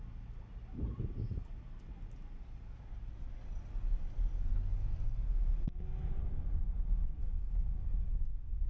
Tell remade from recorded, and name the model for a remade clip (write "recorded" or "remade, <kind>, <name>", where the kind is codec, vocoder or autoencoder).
recorded